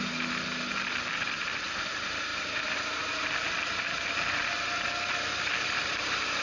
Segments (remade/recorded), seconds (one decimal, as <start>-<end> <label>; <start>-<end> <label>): 0.0-6.4 recorded